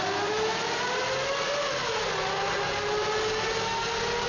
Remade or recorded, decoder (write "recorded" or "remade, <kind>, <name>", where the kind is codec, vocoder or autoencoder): recorded